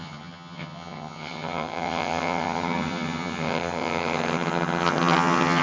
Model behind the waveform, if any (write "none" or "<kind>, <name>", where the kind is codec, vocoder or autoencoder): vocoder, HiFi-GAN